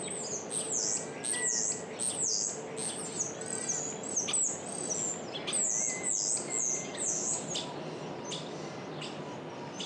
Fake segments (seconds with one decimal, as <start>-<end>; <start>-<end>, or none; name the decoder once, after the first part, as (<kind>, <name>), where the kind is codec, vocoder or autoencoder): none